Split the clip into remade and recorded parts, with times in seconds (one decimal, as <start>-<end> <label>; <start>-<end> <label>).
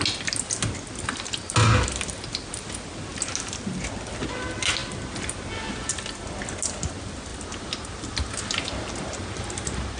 0.0-10.0 recorded